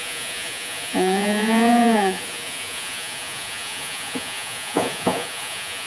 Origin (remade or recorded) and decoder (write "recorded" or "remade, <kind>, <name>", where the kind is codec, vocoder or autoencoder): remade, vocoder, Vocos